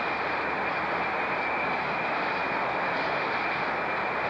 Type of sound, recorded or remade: recorded